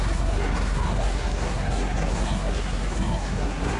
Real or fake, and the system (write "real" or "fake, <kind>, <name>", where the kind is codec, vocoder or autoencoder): fake, codec, SNAC